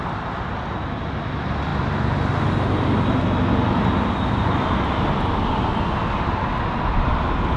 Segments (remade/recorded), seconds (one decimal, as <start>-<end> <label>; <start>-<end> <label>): 0.0-7.6 recorded